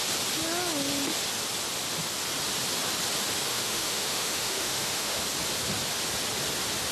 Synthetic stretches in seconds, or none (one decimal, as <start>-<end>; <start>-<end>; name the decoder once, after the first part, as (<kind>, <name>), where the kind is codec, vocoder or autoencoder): 3.5-5.2 (autoencoder, DAC-VAE)